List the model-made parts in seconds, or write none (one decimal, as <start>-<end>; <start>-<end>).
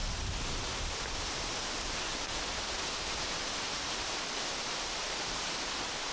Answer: none